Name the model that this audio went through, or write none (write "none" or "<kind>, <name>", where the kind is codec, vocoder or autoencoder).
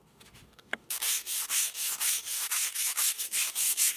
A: codec, DAC